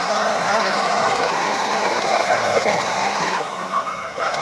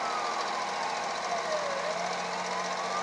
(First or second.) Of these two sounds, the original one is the second